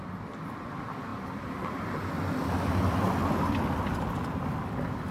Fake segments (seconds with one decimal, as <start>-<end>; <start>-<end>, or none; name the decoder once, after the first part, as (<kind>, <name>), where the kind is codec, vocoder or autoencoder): none